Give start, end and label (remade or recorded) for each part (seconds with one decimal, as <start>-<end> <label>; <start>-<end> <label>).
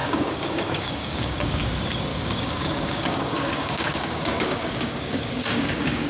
0.0-1.6 remade; 1.6-2.1 recorded; 2.1-6.1 remade